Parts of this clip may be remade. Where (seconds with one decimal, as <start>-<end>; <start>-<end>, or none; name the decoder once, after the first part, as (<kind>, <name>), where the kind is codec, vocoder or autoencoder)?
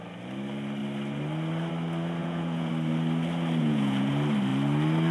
2.2-2.7 (vocoder, Vocos); 3.6-4.1